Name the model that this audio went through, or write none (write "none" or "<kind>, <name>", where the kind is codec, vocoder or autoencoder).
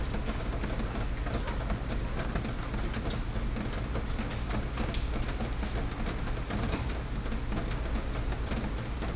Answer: none